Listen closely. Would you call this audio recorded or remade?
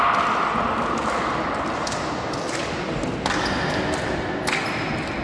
recorded